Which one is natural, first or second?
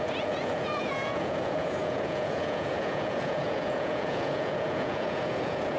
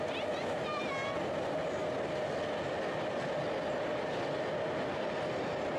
second